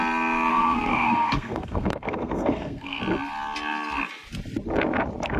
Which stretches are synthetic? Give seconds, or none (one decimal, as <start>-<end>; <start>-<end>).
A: 0.5-3.0